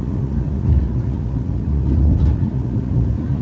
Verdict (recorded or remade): remade